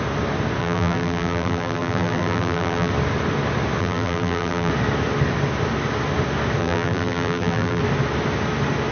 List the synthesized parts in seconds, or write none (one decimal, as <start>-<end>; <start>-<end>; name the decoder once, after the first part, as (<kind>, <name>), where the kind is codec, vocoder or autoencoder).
0.6-2.9 (vocoder, BigVGAN v2); 3.8-4.7; 6.6-7.8